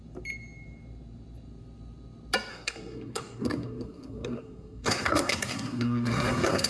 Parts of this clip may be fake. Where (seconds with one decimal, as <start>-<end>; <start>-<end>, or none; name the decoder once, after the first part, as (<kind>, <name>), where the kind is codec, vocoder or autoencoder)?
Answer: 2.5-6.7 (codec, SNAC)